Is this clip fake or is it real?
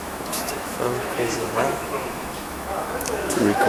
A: fake